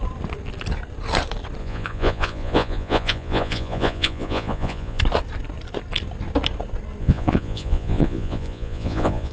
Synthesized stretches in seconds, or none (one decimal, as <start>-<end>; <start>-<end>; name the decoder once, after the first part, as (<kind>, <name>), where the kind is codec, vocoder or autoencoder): 1.6-5.0 (vocoder, Vocos); 7.0-9.3